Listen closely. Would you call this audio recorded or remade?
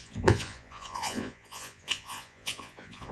remade